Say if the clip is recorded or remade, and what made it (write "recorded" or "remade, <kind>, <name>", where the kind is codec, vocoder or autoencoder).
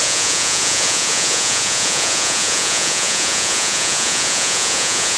remade, vocoder, Vocos